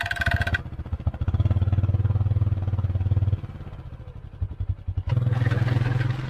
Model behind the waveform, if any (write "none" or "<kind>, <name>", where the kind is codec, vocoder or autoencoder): none